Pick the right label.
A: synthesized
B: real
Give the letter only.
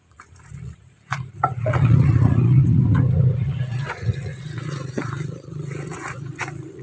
A